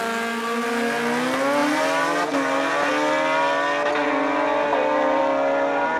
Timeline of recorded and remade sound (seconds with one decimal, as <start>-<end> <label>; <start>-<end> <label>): 0.0-1.6 recorded; 1.6-2.9 remade; 2.9-4.7 recorded; 4.7-5.2 remade; 5.2-6.0 recorded